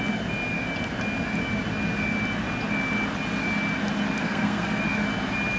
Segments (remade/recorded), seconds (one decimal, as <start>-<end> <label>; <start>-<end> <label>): 0.0-4.2 recorded; 4.2-4.8 remade; 4.8-5.6 recorded